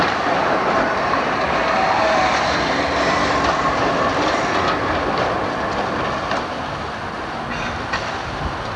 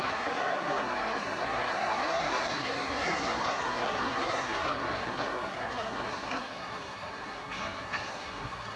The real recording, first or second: first